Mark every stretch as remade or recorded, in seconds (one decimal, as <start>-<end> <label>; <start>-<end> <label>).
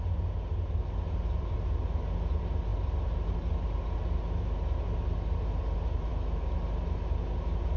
0.0-6.1 recorded; 6.1-6.6 remade; 6.6-7.8 recorded